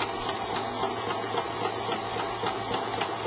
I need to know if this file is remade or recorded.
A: recorded